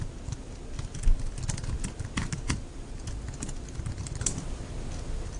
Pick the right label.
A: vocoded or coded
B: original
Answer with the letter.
B